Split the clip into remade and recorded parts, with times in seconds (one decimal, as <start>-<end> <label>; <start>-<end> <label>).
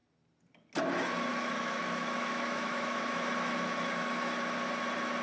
0.0-1.3 recorded; 1.3-4.4 remade; 4.4-5.2 recorded